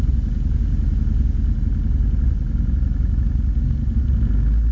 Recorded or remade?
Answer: recorded